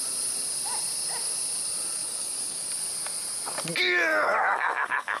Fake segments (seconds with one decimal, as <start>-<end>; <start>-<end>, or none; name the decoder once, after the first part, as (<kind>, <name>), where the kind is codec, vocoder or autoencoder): 2.0-2.7 (codec, DAC); 4.1-5.2